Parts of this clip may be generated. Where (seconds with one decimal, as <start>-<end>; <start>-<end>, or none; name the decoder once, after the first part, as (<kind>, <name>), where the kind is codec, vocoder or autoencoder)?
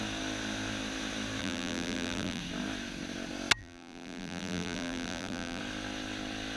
1.4-2.4 (vocoder, BigVGAN v2); 3.6-5.6